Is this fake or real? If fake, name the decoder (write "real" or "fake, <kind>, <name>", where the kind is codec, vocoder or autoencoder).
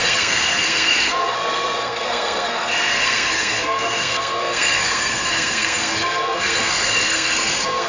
fake, codec, SNAC